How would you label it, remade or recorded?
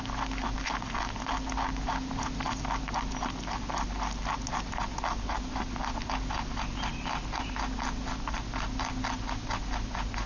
recorded